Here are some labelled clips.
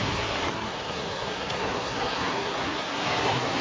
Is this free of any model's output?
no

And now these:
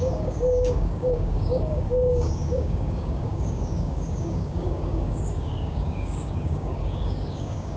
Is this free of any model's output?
no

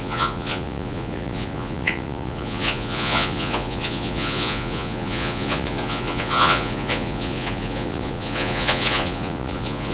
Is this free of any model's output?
no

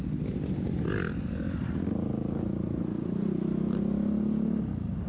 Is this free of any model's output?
yes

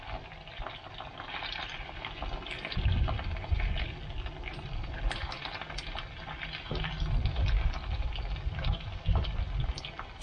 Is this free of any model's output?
yes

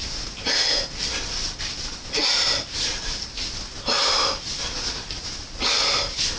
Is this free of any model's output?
no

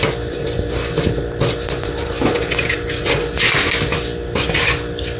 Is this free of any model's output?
yes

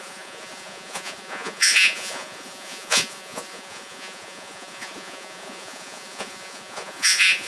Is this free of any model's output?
no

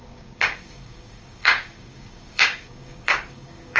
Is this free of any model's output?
no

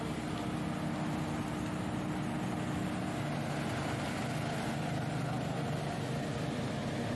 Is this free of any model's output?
yes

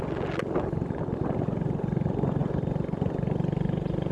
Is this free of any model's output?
yes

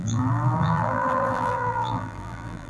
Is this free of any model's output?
no